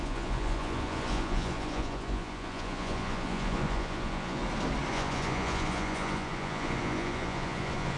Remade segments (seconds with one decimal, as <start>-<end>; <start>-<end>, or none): 0.0-4.4; 4.9-8.0